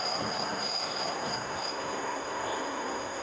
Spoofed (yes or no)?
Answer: yes